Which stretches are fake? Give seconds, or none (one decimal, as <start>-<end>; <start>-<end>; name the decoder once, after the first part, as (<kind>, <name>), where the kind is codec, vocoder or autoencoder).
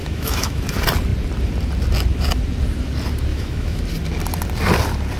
0.0-0.6 (autoencoder, DAC-VAE); 3.3-3.8